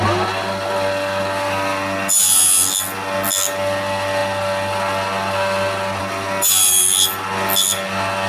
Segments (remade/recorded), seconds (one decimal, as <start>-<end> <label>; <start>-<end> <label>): 0.0-8.3 recorded